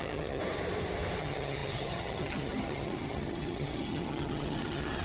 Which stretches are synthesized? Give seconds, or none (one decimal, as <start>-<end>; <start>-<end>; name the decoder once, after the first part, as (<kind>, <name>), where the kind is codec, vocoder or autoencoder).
0.0-0.4 (vocoder, HiFi-GAN); 1.2-5.0